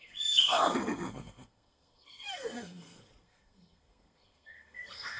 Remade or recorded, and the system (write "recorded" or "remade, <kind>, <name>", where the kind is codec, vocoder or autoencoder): remade, codec, SNAC